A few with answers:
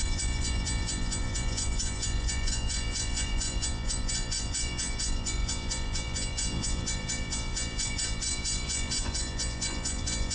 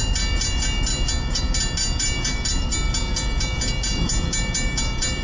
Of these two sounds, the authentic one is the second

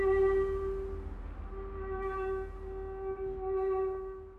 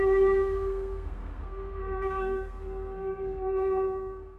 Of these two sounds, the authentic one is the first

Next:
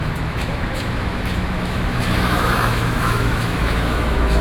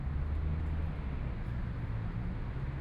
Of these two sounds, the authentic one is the second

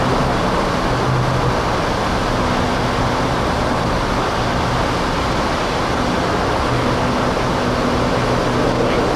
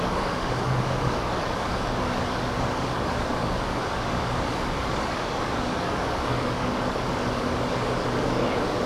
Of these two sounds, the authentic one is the first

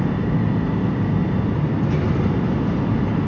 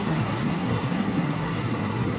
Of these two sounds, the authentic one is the first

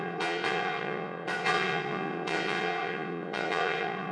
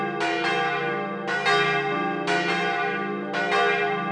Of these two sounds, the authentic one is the second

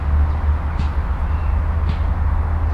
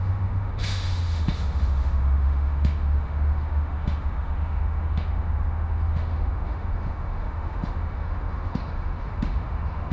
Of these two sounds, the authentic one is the first